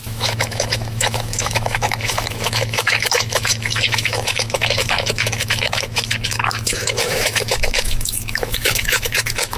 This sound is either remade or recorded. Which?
remade